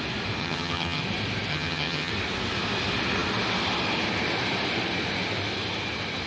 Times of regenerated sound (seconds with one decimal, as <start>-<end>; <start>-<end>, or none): 0.4-1.0; 1.5-2.1